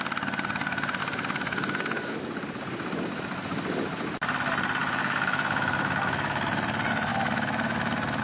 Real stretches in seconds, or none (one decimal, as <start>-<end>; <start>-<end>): 0.0-1.0; 2.2-4.8; 6.5-7.1